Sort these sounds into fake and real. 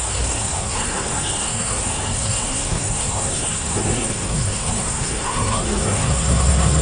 fake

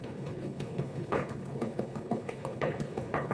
fake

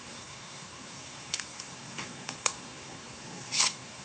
fake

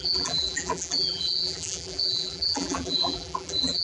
fake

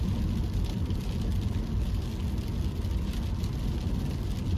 real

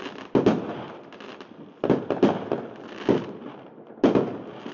real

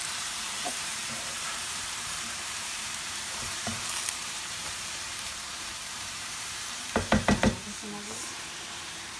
fake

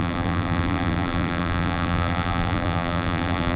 fake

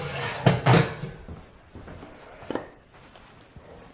real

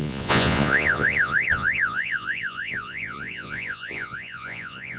fake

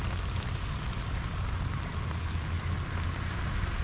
real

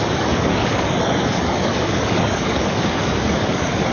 fake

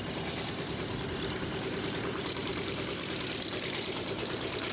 fake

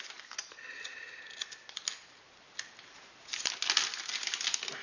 real